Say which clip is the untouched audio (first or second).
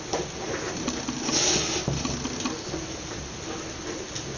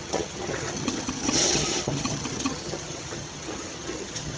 first